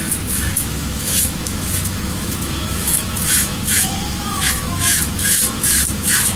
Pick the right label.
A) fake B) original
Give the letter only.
A